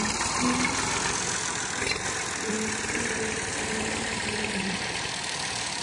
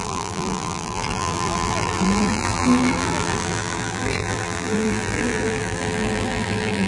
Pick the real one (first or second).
first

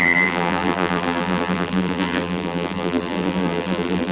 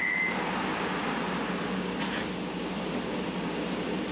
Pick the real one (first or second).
second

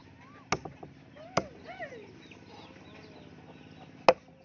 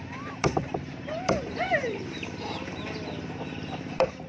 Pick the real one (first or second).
first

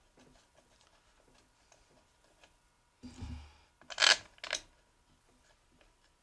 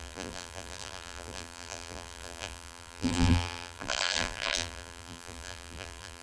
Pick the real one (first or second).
first